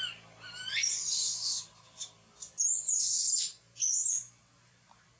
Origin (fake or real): real